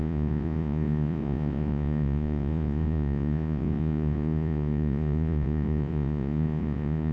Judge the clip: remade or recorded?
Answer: remade